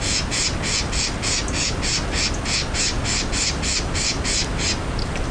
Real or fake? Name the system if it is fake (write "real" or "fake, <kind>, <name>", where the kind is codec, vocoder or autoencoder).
real